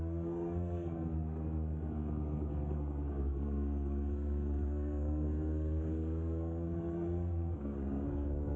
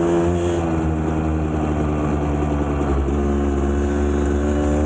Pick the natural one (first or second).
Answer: second